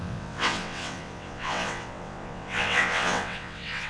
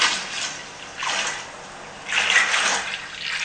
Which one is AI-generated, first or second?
first